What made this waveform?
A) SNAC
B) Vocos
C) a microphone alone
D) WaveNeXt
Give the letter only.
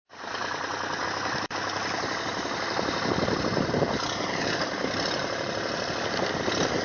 C